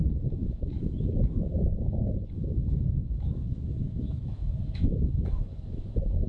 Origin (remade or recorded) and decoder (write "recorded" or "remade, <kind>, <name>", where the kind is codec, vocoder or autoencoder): remade, autoencoder, DAC-VAE